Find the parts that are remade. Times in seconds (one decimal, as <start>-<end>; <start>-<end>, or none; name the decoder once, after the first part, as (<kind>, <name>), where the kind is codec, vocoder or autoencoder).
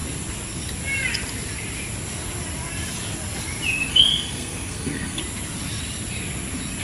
3.9-5.2 (codec, SNAC)